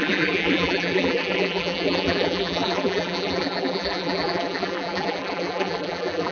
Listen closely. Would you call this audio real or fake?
fake